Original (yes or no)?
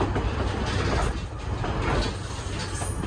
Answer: yes